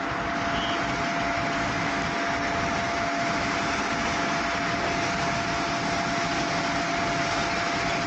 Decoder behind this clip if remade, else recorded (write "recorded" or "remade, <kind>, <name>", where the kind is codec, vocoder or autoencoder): recorded